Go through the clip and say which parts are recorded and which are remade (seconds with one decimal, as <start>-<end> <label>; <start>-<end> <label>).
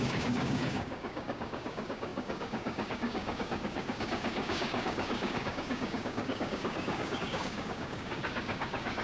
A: 0.0-9.0 remade